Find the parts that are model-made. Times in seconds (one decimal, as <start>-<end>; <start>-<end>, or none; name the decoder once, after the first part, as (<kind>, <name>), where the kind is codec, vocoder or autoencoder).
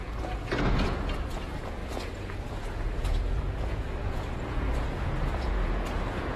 0.0-6.4 (vocoder, Vocos)